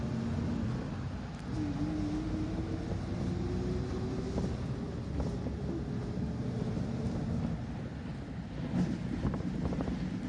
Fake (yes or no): no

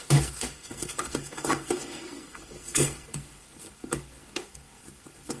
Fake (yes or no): yes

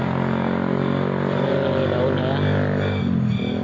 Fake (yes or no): no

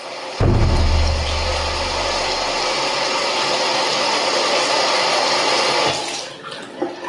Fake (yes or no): no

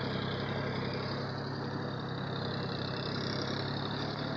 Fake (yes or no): yes